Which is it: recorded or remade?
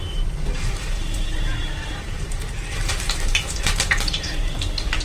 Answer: remade